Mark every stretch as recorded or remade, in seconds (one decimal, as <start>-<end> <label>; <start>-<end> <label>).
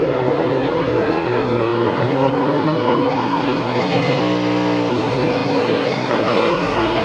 0.0-4.2 remade; 4.2-4.9 recorded; 4.9-7.0 remade